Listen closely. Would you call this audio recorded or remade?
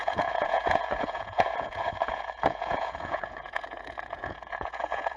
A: remade